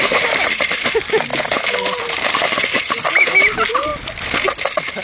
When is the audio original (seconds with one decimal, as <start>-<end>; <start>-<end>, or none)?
1.3-2.0; 3.9-5.0